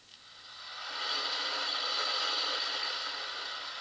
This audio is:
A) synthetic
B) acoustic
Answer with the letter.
B